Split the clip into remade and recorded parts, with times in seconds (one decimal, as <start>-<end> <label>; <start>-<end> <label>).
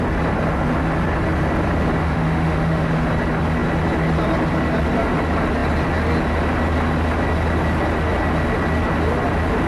0.0-2.0 recorded; 2.0-2.9 remade; 2.9-9.7 recorded